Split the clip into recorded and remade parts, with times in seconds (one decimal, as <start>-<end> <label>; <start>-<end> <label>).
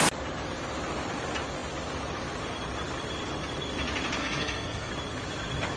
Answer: 0.0-4.2 recorded; 4.2-4.9 remade; 4.9-5.8 recorded